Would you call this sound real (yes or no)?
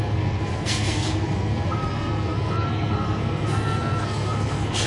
no